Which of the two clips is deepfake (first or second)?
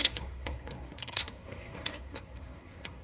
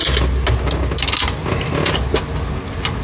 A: first